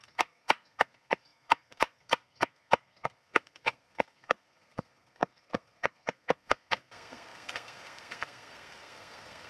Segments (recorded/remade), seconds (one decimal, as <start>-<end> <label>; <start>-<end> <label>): 0.0-9.5 remade